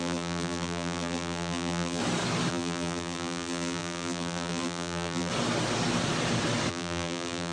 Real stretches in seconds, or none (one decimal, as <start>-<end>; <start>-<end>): 2.0-2.5; 5.3-6.7